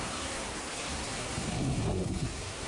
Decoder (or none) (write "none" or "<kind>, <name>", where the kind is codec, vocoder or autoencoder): codec, SNAC